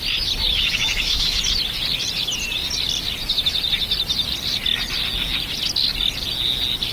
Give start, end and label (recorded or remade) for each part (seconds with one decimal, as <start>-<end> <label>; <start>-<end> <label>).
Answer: 0.0-0.5 recorded; 0.5-1.4 remade; 1.4-6.9 recorded